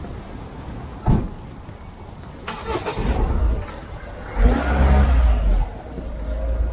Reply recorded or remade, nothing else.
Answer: recorded